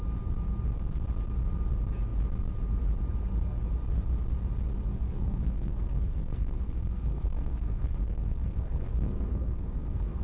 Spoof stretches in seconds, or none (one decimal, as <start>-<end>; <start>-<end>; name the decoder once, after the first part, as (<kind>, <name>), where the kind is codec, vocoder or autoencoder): 4.9-10.2 (codec, SNAC)